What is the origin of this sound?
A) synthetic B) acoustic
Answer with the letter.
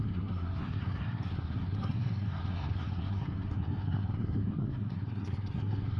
A